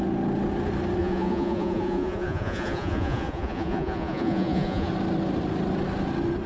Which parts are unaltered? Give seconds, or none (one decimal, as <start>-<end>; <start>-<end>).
0.0-1.0; 4.9-6.5